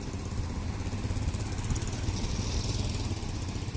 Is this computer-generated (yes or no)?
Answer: no